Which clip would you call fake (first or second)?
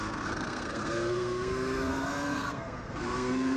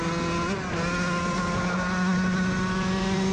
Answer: first